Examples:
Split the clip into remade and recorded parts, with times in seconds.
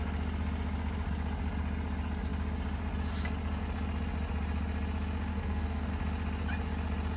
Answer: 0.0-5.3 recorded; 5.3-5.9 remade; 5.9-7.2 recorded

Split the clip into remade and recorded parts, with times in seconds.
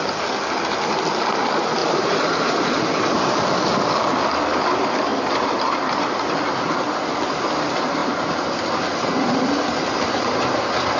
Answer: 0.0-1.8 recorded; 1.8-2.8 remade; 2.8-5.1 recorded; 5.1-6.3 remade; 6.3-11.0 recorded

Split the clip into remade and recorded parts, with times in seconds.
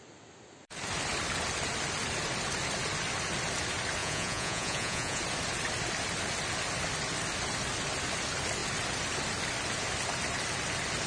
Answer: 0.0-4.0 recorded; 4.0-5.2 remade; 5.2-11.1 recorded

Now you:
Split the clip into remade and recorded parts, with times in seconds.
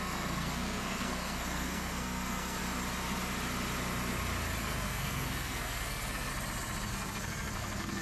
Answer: 0.0-2.6 remade; 2.6-4.6 recorded; 4.6-6.3 remade; 6.3-6.9 recorded; 6.9-8.0 remade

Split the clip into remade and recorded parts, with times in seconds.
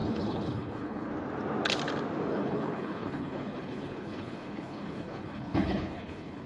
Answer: 0.0-1.1 remade; 1.1-2.3 recorded; 2.3-6.5 remade